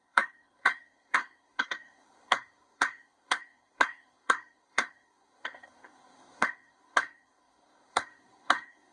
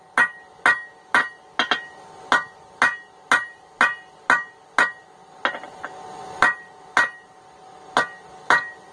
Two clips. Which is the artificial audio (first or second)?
first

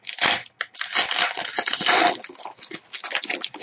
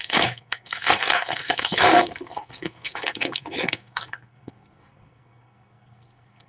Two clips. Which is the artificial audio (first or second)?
second